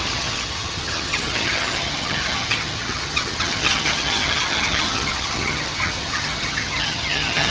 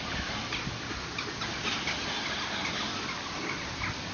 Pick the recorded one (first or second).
second